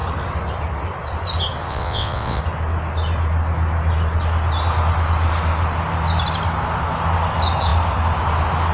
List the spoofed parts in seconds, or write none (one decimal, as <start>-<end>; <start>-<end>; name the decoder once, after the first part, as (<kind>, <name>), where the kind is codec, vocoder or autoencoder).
1.7-2.4 (vocoder, WaveNeXt)